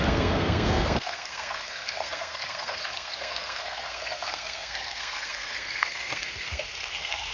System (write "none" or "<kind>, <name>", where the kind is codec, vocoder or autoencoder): codec, SNAC